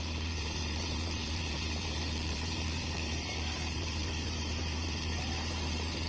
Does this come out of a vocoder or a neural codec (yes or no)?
yes